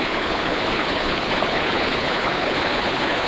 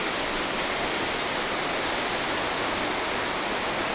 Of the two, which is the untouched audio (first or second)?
second